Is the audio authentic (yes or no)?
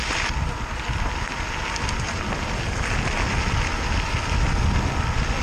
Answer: yes